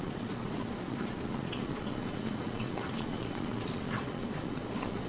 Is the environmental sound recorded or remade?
remade